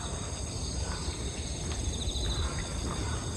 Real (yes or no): yes